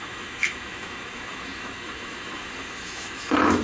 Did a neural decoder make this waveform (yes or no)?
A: yes